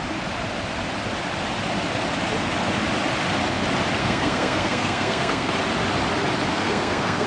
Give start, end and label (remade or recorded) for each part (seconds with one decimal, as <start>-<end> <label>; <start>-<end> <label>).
0.0-4.0 recorded; 4.0-5.5 remade; 5.5-6.5 recorded; 6.5-7.3 remade